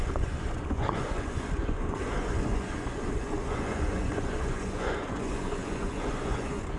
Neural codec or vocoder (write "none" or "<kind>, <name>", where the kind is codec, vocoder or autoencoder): vocoder, Vocos